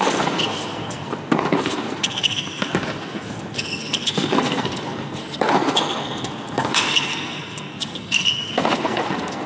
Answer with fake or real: fake